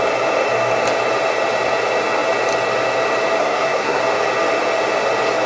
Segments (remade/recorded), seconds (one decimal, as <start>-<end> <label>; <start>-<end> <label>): 0.0-3.4 recorded; 3.4-4.0 remade; 4.0-5.5 recorded